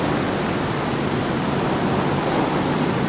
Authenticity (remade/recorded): recorded